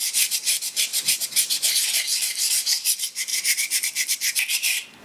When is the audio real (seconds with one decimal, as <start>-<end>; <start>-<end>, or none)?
0.0-3.3